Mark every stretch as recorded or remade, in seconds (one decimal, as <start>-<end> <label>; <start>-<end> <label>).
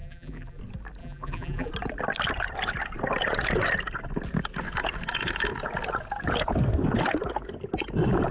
0.0-0.6 remade; 0.6-1.0 recorded; 1.0-1.7 remade; 1.7-8.3 recorded